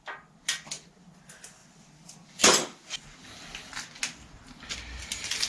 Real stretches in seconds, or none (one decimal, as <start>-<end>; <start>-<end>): 0.0-5.5